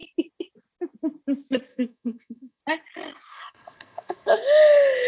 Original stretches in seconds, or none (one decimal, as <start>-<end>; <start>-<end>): 0.0-1.7; 2.6-3.3; 4.3-5.1